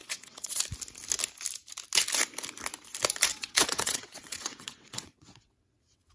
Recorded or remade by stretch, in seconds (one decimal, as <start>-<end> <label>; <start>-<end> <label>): 0.0-0.6 remade; 0.6-3.3 recorded; 3.3-6.1 remade